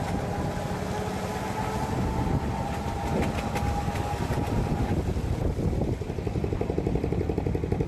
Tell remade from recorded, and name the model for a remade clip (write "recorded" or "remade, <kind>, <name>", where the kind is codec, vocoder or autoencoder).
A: recorded